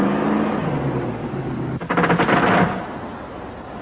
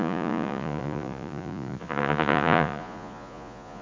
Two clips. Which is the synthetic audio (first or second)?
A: second